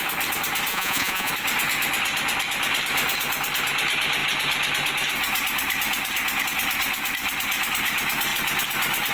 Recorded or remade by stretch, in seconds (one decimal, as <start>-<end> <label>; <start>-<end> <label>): 0.0-0.7 recorded; 0.7-1.3 remade; 1.3-9.1 recorded